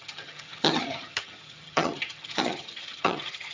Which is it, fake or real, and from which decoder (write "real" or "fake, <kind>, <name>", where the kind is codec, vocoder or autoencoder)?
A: fake, vocoder, HiFi-GAN